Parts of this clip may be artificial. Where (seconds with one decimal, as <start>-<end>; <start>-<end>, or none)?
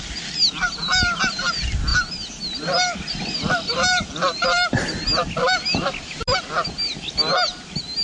none